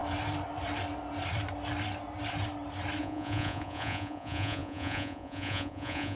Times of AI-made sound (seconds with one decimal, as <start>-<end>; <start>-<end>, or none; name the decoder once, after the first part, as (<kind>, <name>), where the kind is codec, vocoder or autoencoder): 3.0-6.2 (vocoder, Vocos)